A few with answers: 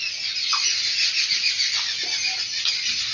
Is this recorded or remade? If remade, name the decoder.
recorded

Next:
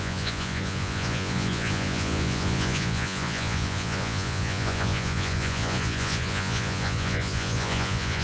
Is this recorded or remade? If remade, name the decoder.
remade, vocoder, Vocos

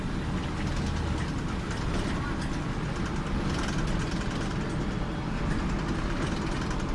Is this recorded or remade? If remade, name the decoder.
recorded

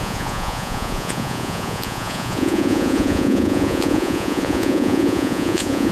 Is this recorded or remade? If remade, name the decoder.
remade, vocoder, Vocos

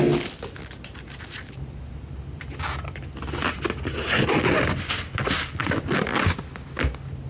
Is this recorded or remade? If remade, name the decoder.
recorded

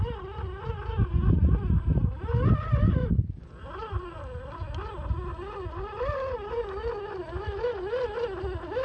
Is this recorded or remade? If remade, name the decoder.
recorded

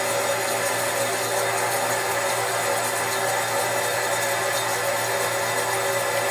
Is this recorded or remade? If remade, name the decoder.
recorded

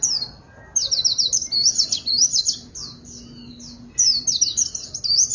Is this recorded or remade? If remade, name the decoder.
recorded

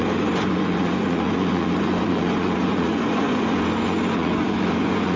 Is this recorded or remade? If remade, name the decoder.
remade, vocoder, Vocos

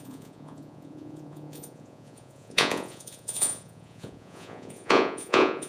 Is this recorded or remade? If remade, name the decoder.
remade, vocoder, Vocos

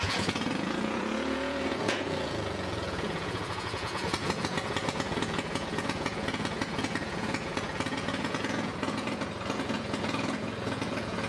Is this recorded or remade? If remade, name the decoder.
remade, vocoder, Vocos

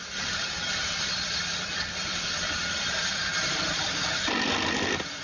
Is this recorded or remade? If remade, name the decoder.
recorded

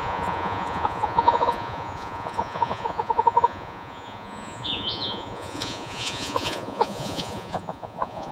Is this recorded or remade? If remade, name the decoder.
remade, vocoder, Vocos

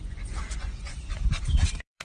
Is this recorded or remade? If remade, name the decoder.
remade, vocoder, Vocos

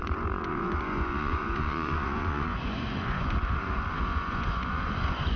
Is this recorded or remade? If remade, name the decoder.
remade, vocoder, Vocos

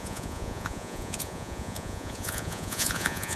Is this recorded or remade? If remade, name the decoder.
remade, vocoder, Vocos